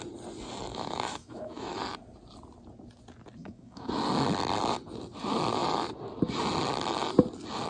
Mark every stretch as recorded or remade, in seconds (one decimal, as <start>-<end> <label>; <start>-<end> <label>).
0.0-0.7 recorded; 0.7-1.8 remade; 1.8-3.4 recorded; 3.4-3.9 remade; 3.9-7.7 recorded